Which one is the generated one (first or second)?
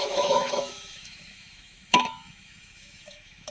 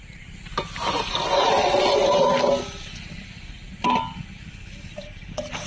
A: first